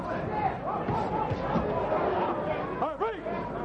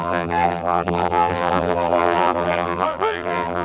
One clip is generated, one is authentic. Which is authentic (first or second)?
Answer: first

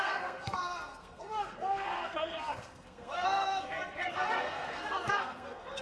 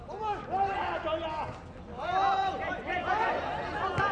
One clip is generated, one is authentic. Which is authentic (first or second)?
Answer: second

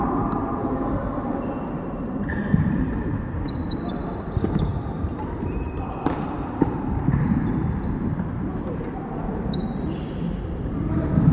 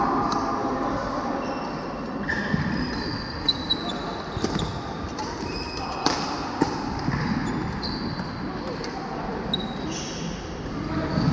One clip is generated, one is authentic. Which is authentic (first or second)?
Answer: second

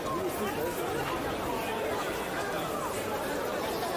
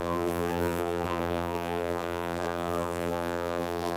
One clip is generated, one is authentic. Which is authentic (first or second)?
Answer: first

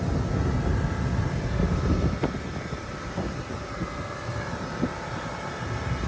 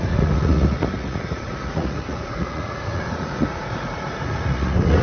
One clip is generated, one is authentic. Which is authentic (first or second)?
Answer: first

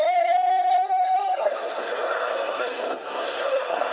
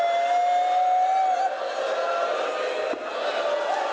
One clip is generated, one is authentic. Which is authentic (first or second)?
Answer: second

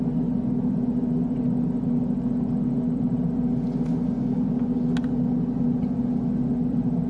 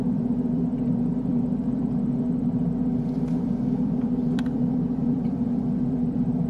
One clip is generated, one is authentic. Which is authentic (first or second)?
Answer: first